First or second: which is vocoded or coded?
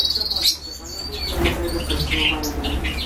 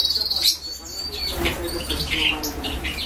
second